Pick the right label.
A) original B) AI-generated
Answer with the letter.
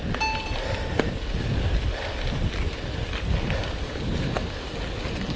A